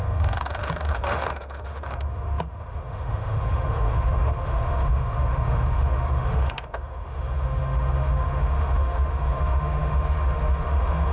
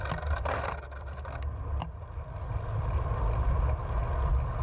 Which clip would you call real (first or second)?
second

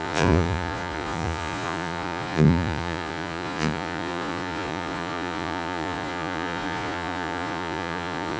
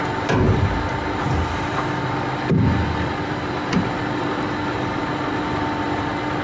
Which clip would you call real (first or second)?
second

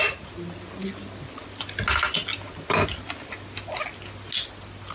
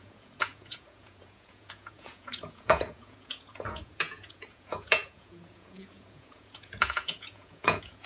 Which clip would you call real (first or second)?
first